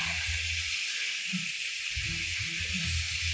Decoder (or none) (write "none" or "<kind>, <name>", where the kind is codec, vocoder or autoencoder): none